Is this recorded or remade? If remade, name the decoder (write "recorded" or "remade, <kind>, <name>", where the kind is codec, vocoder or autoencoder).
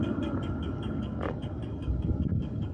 remade, codec, DAC